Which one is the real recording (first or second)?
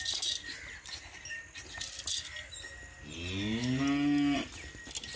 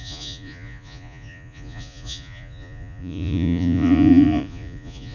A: first